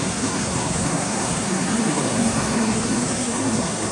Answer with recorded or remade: remade